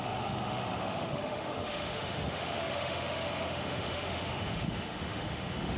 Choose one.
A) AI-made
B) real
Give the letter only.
A